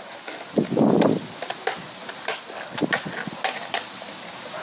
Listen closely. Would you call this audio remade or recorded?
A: recorded